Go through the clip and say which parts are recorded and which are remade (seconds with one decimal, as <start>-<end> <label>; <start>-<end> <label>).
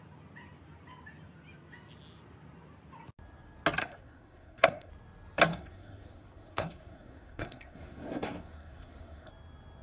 0.0-3.8 recorded; 3.8-4.9 remade; 4.9-5.5 recorded; 5.5-9.3 remade; 9.3-9.8 recorded